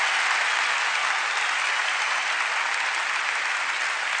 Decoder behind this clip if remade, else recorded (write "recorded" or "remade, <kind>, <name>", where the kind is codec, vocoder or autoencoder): recorded